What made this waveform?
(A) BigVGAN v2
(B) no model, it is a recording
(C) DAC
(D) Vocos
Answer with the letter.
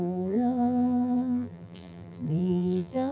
A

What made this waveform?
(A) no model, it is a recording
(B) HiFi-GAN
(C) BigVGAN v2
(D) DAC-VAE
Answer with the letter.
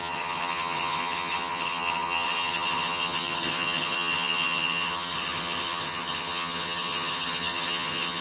B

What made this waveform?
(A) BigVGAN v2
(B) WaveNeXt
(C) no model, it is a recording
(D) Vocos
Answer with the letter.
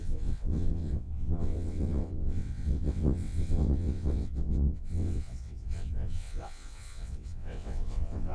B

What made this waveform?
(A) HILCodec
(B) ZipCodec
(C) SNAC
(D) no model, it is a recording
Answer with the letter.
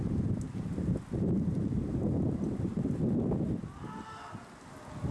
D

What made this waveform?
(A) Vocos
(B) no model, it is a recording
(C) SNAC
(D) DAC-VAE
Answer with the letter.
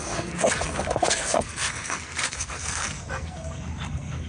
C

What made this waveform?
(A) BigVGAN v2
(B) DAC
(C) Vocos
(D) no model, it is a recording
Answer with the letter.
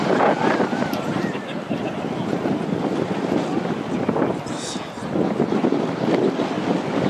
D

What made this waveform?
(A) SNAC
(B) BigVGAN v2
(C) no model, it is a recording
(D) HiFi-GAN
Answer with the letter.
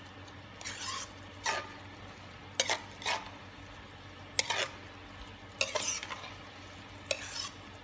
C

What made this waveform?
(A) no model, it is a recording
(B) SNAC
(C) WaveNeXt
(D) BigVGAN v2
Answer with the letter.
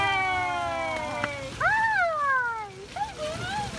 A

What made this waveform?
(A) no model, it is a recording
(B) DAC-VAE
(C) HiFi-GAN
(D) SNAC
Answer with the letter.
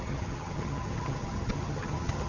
C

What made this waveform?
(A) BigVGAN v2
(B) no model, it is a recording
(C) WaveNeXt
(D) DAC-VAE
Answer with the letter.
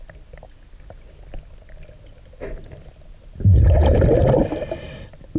B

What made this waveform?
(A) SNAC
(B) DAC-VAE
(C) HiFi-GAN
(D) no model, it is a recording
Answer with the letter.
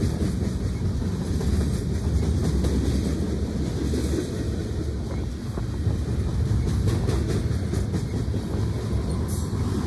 D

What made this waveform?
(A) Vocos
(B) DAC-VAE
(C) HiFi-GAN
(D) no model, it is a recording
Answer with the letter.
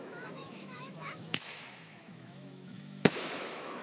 B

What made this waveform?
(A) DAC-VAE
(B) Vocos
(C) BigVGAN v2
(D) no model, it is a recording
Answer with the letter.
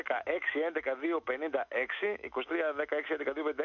A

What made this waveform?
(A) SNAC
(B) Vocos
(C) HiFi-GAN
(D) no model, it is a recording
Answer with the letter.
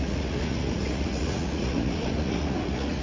B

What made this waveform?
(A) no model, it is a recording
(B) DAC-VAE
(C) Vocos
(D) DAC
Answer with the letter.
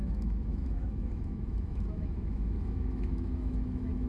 B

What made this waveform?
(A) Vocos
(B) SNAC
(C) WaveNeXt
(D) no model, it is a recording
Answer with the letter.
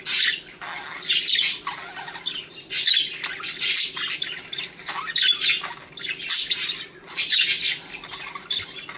D